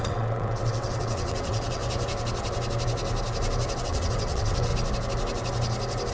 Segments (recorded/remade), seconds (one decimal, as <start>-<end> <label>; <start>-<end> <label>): 0.0-1.8 remade; 1.8-3.8 recorded; 3.8-4.7 remade; 4.7-6.1 recorded